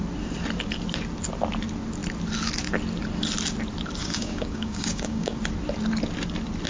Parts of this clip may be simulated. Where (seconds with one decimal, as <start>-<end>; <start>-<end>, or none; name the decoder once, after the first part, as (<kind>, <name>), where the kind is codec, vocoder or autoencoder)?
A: 4.0-5.4 (codec, DAC)

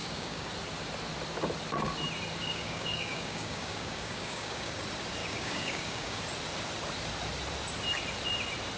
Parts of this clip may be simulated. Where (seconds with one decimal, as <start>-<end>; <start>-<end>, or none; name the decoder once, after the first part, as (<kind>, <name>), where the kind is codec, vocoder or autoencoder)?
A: 0.0-0.5 (codec, DAC); 2.4-4.8; 5.2-6.2